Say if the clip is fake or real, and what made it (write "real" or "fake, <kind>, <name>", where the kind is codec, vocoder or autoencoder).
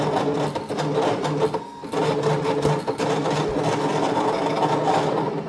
real